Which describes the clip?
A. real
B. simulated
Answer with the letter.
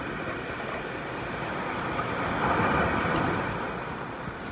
A